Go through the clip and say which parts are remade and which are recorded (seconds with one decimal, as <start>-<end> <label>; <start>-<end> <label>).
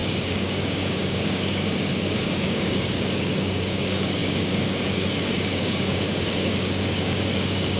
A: 0.0-7.8 remade